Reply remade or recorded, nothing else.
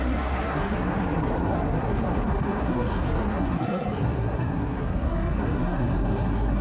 remade